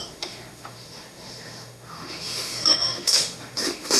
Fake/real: fake